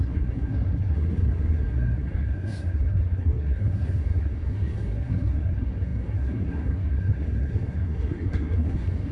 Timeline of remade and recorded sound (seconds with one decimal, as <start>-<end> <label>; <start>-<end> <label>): 0.0-9.1 remade